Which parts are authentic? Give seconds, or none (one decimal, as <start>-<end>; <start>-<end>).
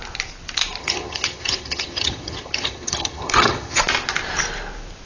0.0-0.8; 3.8-5.1